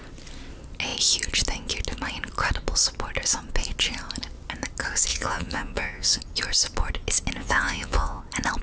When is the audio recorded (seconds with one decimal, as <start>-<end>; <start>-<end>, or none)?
0.0-5.1; 6.2-7.4; 8.2-8.6